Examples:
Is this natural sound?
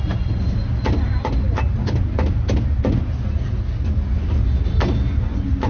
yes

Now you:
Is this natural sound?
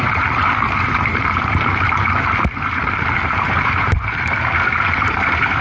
no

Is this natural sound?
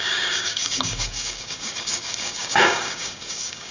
no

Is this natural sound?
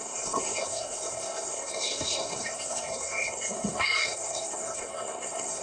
no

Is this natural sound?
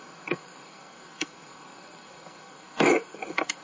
no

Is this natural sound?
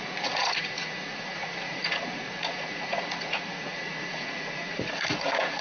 no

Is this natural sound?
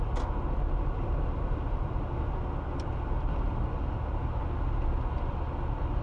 yes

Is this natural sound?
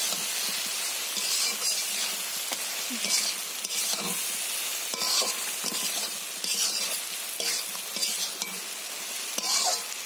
yes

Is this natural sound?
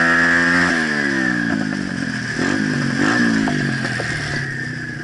yes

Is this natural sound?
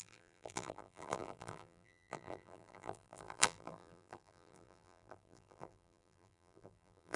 no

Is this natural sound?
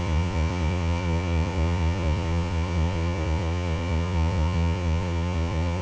no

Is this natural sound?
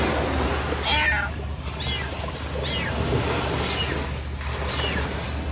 yes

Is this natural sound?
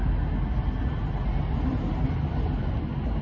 yes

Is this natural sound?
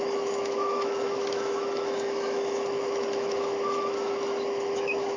no